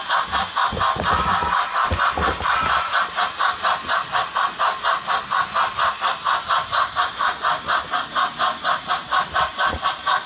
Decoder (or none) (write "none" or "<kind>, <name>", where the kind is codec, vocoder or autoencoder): none